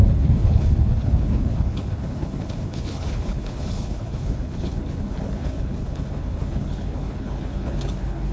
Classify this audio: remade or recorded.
remade